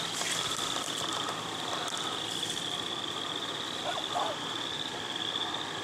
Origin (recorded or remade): recorded